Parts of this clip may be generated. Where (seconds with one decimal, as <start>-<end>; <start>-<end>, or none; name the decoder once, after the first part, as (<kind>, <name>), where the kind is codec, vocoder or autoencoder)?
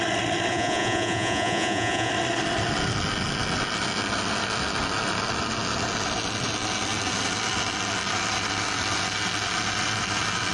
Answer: 0.5-2.1 (vocoder, Vocos)